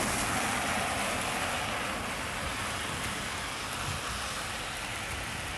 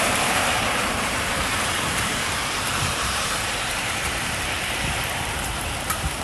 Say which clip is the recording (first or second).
first